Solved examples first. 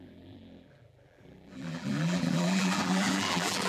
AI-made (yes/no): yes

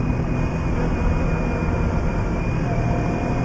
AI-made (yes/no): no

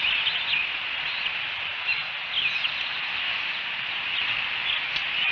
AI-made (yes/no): no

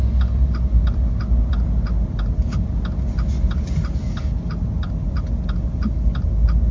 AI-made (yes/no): no